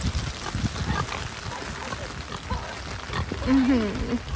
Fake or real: real